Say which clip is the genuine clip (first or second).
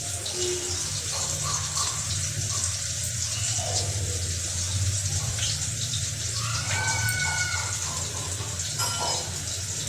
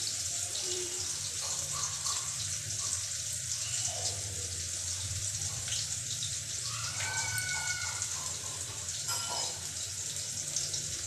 first